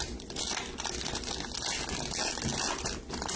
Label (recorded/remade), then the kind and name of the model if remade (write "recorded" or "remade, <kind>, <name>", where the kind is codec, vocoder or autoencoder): recorded